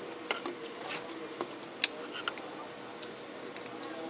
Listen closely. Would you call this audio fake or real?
real